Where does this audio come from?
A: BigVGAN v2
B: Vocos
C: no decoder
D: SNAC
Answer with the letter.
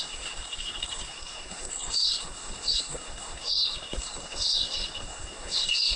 D